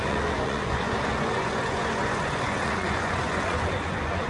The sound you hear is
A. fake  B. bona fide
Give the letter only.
A